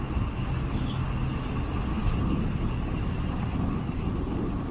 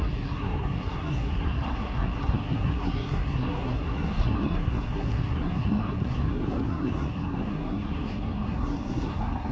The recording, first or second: first